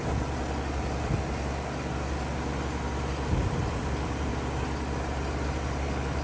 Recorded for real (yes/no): yes